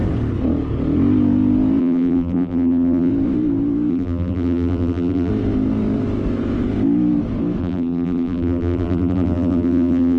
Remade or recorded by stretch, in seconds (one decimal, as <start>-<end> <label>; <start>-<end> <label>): 0.0-1.8 recorded; 1.8-3.1 remade; 3.1-3.9 recorded; 3.9-5.3 remade; 5.3-7.6 recorded; 7.6-10.2 remade